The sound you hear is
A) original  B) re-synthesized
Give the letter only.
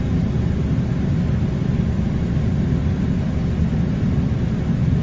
A